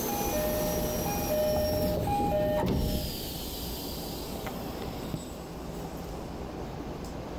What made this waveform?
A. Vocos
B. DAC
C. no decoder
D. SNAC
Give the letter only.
C